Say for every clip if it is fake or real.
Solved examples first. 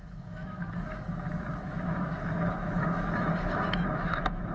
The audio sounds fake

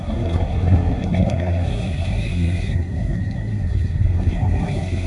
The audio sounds fake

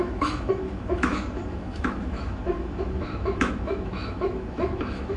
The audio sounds fake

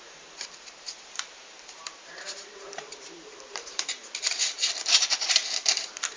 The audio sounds fake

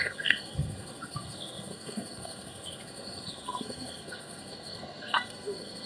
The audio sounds fake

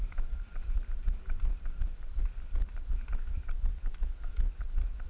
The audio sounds real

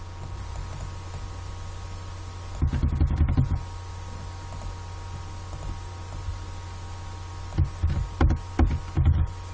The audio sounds real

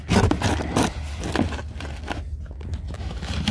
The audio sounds real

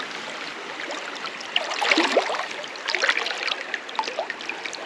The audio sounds real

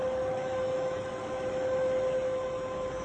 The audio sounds fake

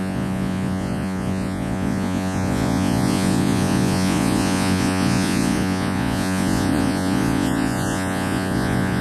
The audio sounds fake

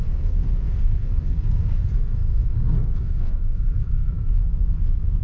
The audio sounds fake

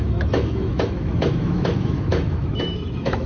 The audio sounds fake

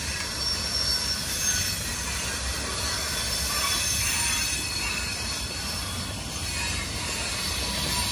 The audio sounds real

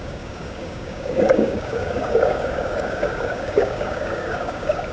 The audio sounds fake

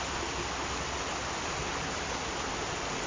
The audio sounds real